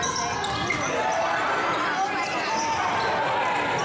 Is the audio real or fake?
real